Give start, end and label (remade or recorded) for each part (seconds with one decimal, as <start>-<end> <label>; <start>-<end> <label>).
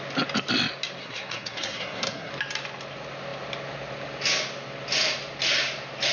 0.0-1.0 recorded; 1.0-2.3 remade; 2.3-6.1 recorded